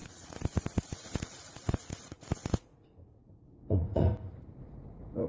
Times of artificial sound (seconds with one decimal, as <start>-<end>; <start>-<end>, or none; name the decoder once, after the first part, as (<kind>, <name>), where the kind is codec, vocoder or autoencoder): 0.0-4.1 (vocoder, Vocos); 4.6-5.3